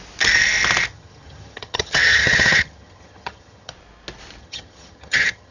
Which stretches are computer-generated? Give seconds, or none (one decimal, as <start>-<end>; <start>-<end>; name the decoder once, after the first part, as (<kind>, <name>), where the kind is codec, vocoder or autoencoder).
0.9-3.7 (vocoder, HiFi-GAN); 4.4-5.5